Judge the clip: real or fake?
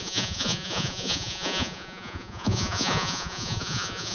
fake